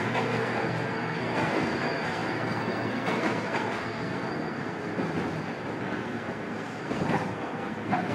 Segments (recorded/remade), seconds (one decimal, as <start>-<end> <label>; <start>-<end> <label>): 0.0-4.9 remade; 4.9-5.8 recorded; 5.8-8.1 remade